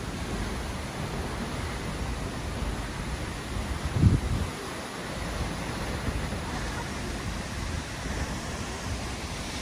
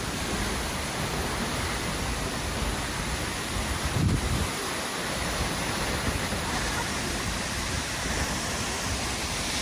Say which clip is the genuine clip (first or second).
first